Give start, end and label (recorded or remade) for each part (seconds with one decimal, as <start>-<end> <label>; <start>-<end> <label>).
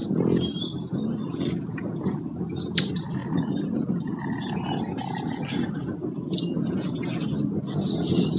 0.0-8.4 recorded